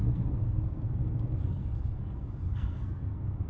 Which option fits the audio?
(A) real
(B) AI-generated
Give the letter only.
B